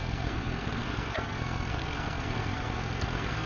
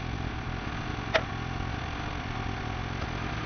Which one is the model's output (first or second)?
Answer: first